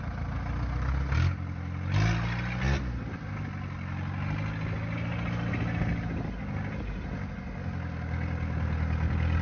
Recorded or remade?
recorded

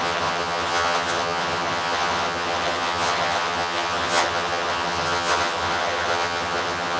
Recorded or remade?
remade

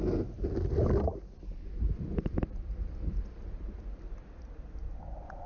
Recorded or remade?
recorded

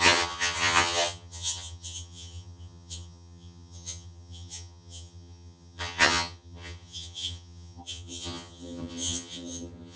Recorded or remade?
remade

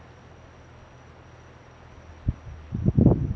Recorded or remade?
recorded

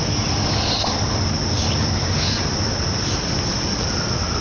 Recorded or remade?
recorded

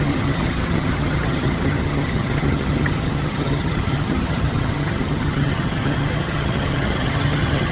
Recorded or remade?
remade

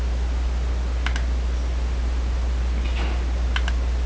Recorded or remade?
recorded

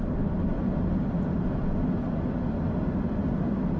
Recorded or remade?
recorded